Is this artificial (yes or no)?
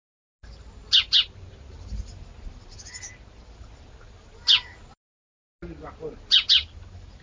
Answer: no